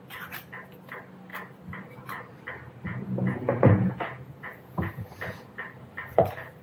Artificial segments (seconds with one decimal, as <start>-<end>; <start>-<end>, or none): 2.9-5.5